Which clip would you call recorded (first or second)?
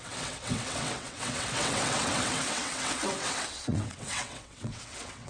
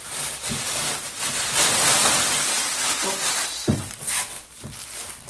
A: second